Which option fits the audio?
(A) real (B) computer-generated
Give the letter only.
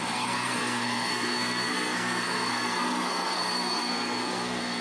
B